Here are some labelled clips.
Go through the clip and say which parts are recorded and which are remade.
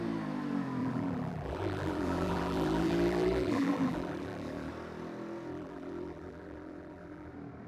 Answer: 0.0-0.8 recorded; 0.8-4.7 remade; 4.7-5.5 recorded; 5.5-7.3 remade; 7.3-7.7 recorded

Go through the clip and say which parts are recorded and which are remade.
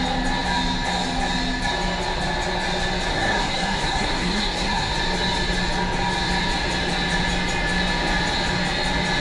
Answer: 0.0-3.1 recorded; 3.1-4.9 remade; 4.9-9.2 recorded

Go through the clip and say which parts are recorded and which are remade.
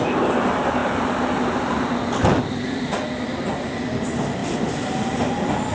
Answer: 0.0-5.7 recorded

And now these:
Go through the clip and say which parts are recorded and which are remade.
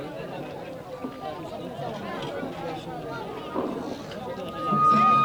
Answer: 0.0-5.2 recorded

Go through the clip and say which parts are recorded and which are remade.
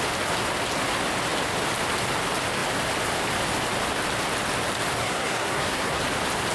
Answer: 0.0-5.0 recorded; 5.0-6.0 remade; 6.0-6.5 recorded